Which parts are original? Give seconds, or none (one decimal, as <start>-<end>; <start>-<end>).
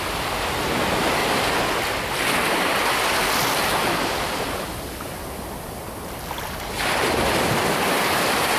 1.2-5.0